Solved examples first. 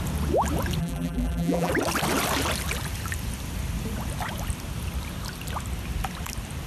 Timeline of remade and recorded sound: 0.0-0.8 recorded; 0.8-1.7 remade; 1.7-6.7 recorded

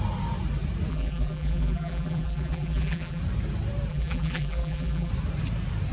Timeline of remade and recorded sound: 0.0-0.9 recorded; 0.9-3.2 remade; 3.2-3.9 recorded; 3.9-5.1 remade; 5.1-5.9 recorded